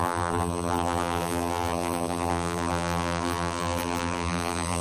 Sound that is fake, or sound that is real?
fake